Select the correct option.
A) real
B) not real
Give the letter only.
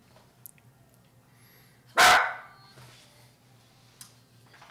A